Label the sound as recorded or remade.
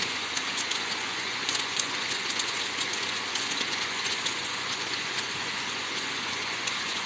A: remade